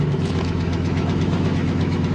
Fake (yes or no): yes